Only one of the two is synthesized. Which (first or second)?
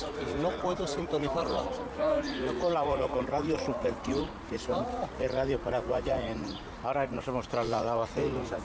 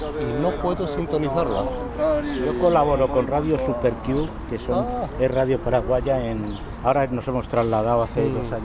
first